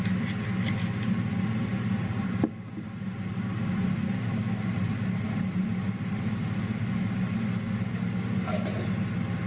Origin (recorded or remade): recorded